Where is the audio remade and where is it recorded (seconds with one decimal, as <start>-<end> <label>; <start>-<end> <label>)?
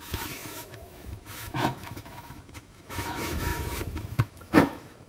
0.0-5.1 remade